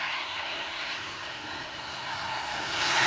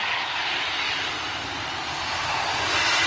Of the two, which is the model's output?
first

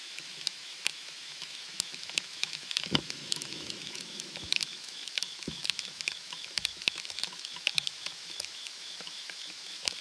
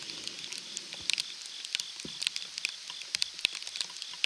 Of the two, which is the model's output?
first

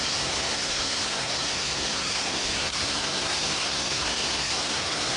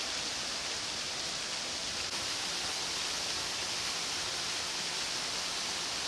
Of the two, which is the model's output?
first